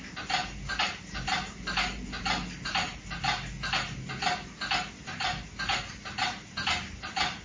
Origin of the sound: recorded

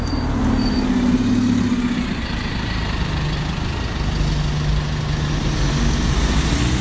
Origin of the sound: recorded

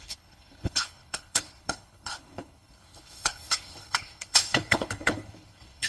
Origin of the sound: remade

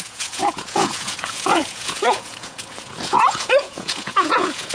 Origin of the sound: remade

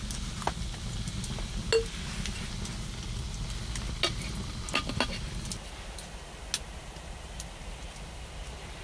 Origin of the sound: recorded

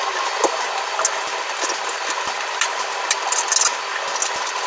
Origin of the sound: recorded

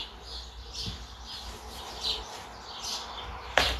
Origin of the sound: recorded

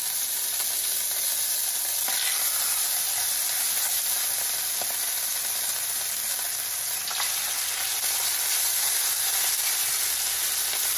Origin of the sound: recorded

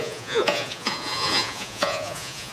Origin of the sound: remade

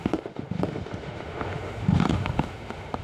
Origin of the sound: remade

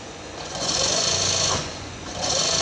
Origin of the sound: remade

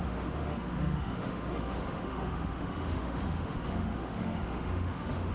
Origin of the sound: remade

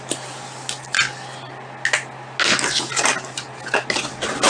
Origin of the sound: recorded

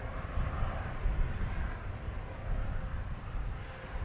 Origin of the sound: recorded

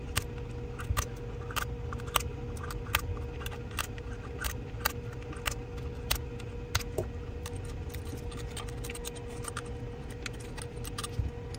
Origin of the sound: recorded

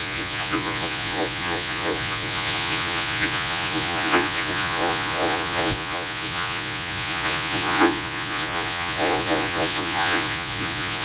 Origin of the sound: remade